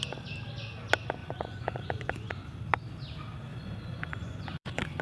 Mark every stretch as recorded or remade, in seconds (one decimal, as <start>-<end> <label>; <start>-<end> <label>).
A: 0.0-1.2 recorded; 1.2-2.3 remade; 2.3-3.5 recorded; 3.5-5.0 remade